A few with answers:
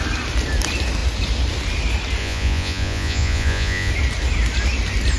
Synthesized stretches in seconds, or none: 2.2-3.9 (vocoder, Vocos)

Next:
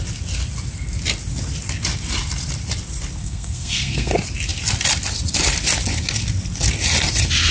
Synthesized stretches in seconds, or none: 3.2-4.1 (codec, SNAC)

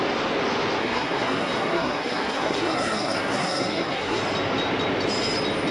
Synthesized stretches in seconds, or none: 0.8-4.2 (codec, SNAC)

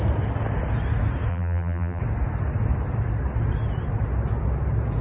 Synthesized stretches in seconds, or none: 1.3-2.0 (vocoder, BigVGAN v2)

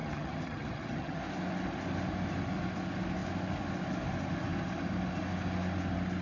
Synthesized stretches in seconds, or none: 0.0-1.2 (vocoder, HiFi-GAN)

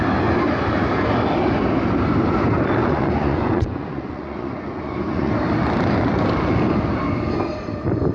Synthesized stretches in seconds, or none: 2.8-5.3 (vocoder, Vocos)

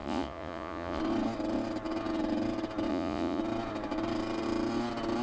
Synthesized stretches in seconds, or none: 0.0-1.0 (vocoder, Vocos); 2.9-3.4

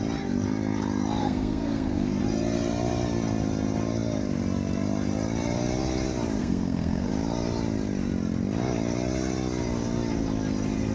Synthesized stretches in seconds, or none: 1.2-2.2 (codec, SNAC); 6.4-7.1